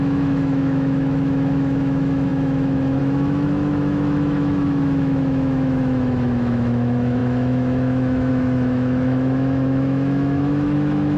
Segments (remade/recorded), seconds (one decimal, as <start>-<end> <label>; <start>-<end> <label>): 0.0-11.2 remade